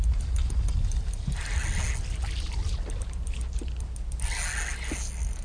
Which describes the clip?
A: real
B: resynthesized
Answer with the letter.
A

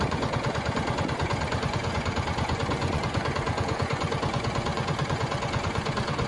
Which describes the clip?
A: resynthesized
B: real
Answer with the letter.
A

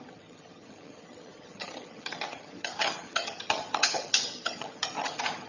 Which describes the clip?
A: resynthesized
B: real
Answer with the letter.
A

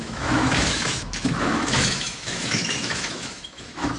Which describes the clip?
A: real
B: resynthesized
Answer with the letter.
B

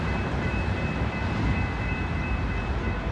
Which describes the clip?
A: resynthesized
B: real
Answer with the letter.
A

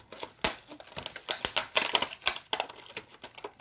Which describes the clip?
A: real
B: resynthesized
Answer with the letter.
A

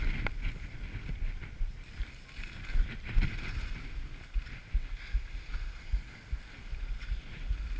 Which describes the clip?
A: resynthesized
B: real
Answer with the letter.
B